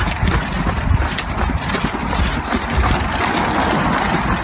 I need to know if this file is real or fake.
real